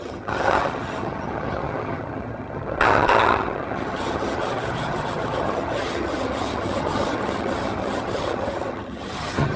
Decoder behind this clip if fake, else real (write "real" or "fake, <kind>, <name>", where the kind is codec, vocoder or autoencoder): fake, vocoder, HiFi-GAN